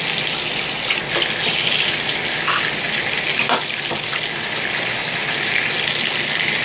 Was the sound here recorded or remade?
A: recorded